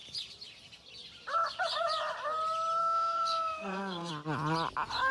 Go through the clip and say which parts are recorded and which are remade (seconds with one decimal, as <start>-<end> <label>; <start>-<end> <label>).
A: 0.0-2.8 recorded; 2.8-4.1 remade; 4.1-5.1 recorded